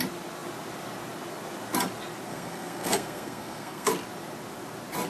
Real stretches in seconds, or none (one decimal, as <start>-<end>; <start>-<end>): 0.0-2.3; 3.9-5.1